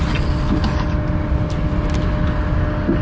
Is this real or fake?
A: real